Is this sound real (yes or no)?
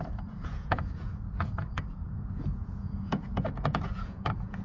no